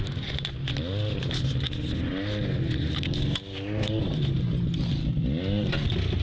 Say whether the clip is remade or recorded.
recorded